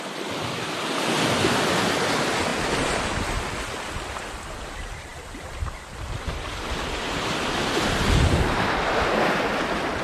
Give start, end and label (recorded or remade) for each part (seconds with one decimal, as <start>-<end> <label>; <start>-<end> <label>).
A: 0.0-10.0 recorded